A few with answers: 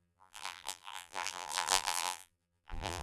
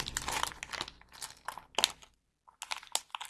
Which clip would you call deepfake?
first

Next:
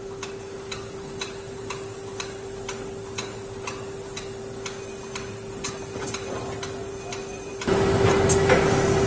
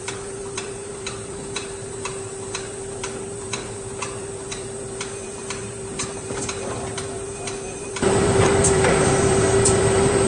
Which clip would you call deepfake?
second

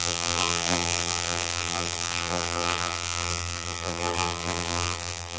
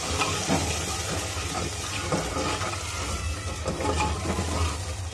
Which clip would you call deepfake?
first